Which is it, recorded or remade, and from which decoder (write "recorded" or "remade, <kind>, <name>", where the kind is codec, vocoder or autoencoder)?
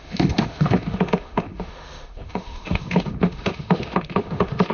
remade, autoencoder, DAC-VAE